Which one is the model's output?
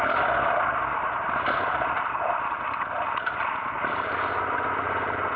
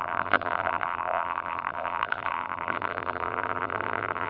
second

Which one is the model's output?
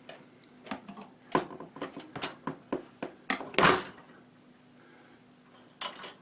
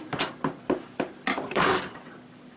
second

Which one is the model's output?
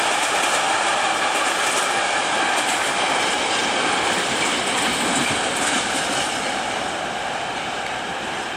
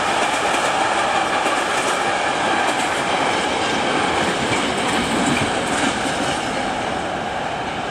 first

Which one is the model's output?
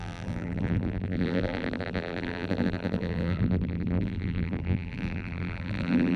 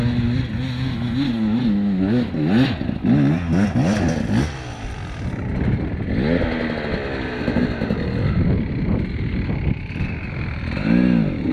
first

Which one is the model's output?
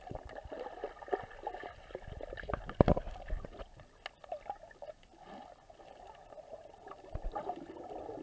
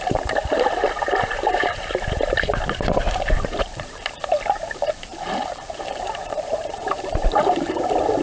second